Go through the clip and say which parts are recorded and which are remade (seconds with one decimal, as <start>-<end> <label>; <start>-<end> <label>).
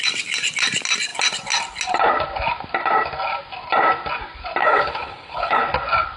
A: 0.0-4.6 recorded; 4.6-5.6 remade; 5.6-6.2 recorded